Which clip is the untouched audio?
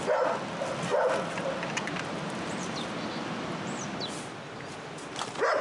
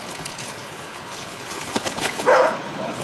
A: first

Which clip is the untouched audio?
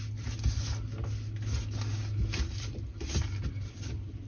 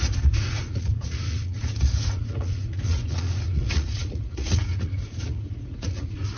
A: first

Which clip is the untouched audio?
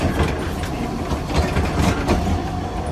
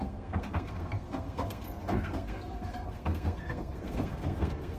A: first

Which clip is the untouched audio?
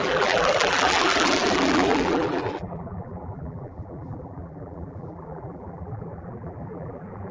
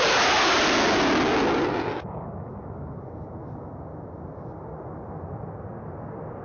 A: second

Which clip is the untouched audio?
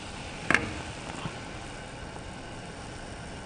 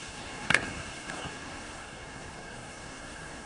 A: first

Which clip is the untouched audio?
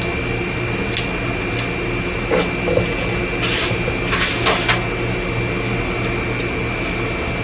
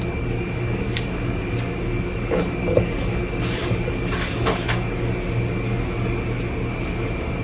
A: first